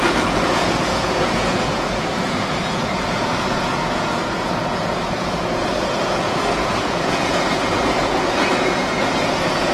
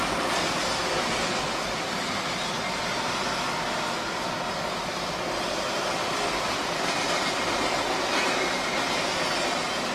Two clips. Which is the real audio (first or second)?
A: second